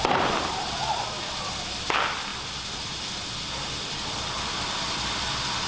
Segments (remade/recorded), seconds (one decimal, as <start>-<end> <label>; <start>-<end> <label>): 0.0-5.7 recorded